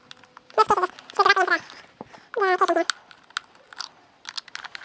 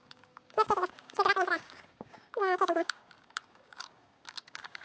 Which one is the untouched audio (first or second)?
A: first